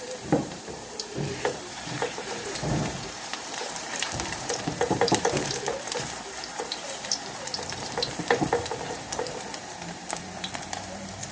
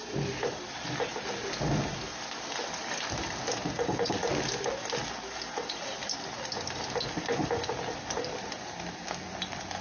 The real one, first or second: second